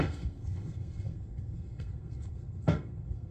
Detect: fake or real fake